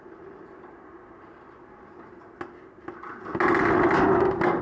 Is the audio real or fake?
real